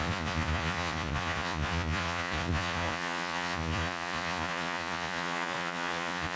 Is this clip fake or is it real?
fake